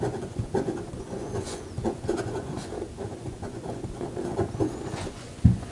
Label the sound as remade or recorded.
remade